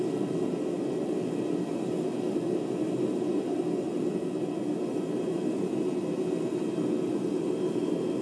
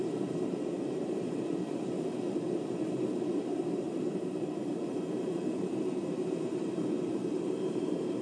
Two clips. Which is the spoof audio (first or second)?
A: second